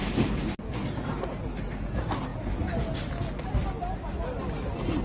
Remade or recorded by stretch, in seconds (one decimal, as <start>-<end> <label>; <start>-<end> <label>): 0.0-5.0 recorded